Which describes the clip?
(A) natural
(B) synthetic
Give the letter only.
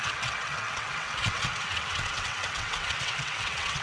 B